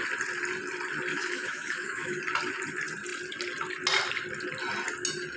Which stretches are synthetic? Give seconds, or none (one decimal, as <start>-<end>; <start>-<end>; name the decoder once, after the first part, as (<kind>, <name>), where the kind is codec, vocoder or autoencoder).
1.1-2.2 (autoencoder, DAC-VAE)